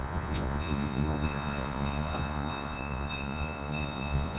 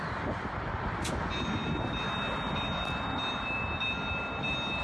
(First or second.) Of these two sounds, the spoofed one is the first